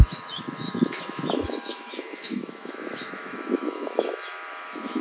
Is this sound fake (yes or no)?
yes